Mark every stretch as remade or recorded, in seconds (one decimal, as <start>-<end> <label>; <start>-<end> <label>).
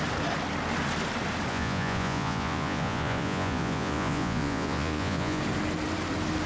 0.0-1.5 recorded; 1.5-5.4 remade; 5.4-6.5 recorded